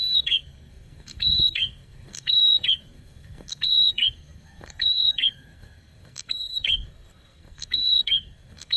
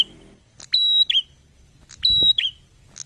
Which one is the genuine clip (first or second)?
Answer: second